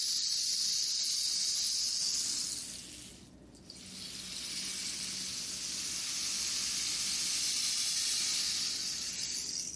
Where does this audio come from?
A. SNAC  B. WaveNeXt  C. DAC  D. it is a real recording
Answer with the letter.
D